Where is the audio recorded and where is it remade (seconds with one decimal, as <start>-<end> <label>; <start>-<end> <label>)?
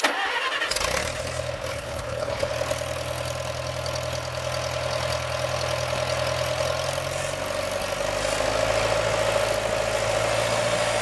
0.0-1.7 recorded; 1.7-2.5 remade; 2.5-11.0 recorded